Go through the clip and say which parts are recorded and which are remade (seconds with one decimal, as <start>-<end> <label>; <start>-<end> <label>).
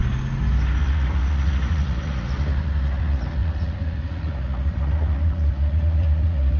0.0-0.8 recorded; 0.8-6.6 remade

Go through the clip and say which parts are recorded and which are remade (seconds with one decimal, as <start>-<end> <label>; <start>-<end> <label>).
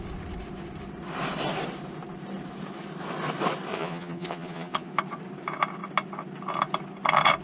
0.0-3.7 recorded; 3.7-4.9 remade; 4.9-7.4 recorded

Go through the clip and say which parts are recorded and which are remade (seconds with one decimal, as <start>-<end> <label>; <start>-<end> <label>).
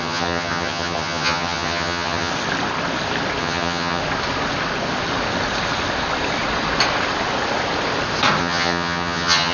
0.0-2.3 remade; 2.3-3.4 recorded; 3.4-4.0 remade; 4.0-8.4 recorded; 8.4-9.5 remade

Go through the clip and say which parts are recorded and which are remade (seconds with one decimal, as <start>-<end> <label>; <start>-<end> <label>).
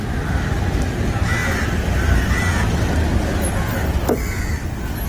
0.0-1.4 recorded; 1.4-2.4 remade; 2.4-3.7 recorded; 3.7-5.1 remade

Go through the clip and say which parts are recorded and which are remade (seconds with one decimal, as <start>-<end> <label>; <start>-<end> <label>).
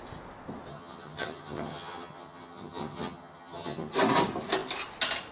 0.0-0.7 recorded; 0.7-3.9 remade; 3.9-5.3 recorded